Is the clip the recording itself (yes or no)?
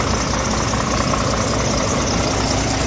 yes